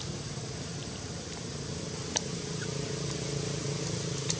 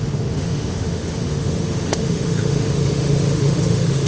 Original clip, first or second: first